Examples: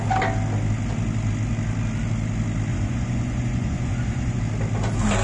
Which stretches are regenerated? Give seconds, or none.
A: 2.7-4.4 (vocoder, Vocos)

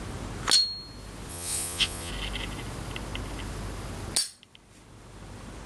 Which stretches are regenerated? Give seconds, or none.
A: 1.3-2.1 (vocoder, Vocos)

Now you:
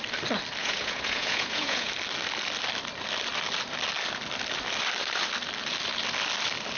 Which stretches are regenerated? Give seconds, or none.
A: 0.6-1.9 (vocoder, Vocos)